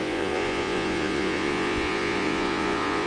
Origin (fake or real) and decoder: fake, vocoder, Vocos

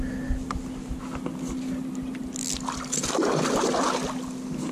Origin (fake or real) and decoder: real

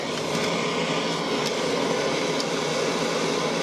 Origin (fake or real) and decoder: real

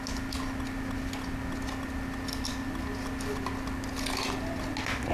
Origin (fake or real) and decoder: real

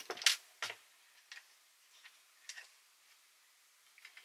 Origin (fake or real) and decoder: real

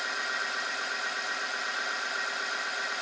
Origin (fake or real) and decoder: real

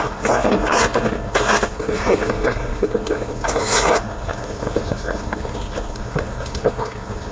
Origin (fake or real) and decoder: fake, codec, SNAC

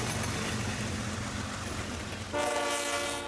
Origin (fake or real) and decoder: real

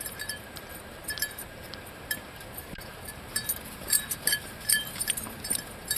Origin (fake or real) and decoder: fake, vocoder, BigVGAN v2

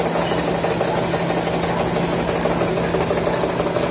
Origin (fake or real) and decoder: real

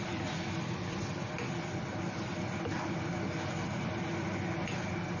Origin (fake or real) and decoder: real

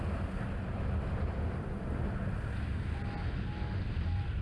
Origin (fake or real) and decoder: real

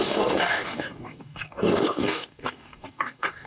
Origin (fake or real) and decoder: fake, codec, DAC